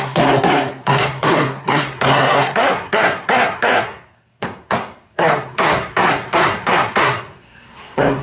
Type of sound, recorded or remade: remade